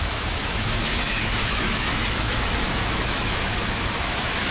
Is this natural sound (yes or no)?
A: no